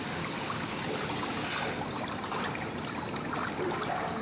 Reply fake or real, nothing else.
real